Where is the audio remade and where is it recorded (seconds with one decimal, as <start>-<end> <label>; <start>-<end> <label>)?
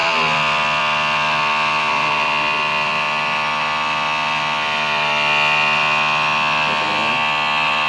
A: 0.0-0.8 remade; 0.8-7.9 recorded